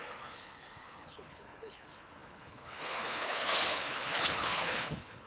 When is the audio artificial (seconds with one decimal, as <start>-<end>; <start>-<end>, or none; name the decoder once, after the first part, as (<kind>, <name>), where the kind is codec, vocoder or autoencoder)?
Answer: 0.0-5.3 (codec, HILCodec)